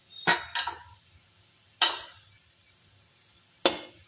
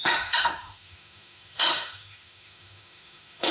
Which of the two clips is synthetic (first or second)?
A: second